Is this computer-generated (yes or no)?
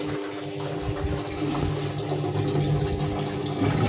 no